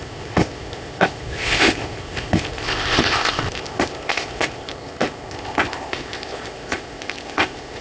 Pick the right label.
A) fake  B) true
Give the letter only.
A